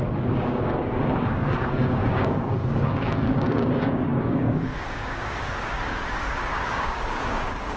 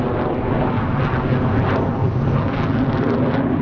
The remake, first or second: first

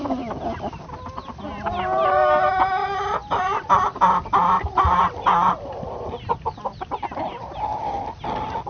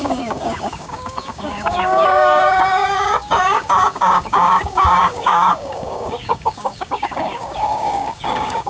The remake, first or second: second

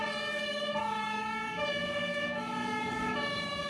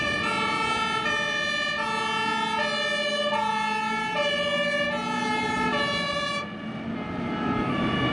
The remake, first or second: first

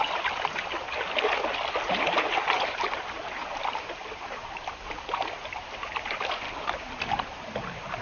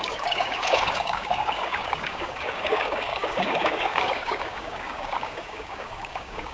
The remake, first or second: second